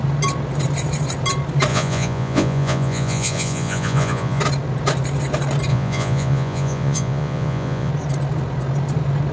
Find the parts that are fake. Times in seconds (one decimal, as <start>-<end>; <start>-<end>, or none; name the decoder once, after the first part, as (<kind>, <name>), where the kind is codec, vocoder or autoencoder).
1.7-4.4 (vocoder, Vocos); 5.7-7.9